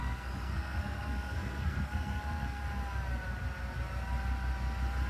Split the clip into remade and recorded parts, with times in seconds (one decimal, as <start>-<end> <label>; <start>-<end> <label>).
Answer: 0.0-2.6 remade; 2.6-5.1 recorded